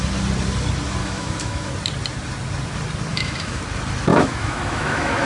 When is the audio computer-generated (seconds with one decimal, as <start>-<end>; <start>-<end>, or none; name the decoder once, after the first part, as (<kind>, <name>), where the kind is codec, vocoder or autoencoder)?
1.0-1.7 (autoencoder, DAC-VAE); 3.1-3.6; 4.1-5.3